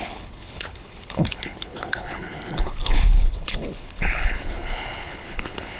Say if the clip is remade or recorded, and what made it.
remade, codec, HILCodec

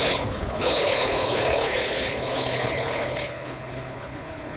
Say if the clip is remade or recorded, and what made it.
remade, codec, HILCodec